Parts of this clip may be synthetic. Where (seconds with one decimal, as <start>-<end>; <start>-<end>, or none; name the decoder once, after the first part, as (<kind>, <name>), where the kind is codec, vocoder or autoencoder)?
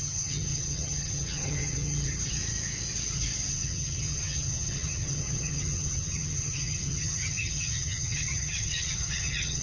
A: 0.0-2.4 (vocoder, HiFi-GAN); 3.5-9.6